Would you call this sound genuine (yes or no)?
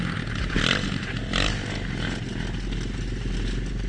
yes